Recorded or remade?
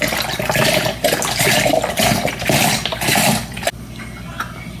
recorded